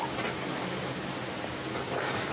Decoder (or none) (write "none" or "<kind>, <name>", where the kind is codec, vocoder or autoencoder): none